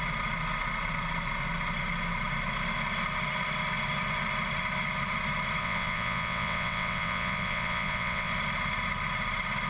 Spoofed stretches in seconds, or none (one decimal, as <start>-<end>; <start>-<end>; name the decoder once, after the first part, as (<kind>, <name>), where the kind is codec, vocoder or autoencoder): 5.6-8.3 (vocoder, WaveNeXt)